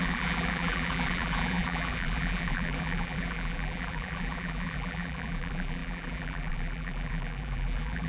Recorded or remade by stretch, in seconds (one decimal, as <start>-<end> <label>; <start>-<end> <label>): 0.0-8.1 remade

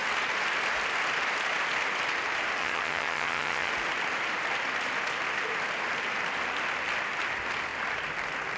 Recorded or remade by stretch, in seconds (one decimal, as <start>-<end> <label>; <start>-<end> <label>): 0.0-2.6 recorded; 2.6-3.7 remade; 3.7-8.6 recorded